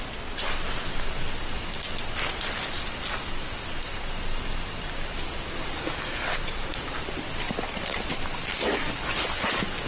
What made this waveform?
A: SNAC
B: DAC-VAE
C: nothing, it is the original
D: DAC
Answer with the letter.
C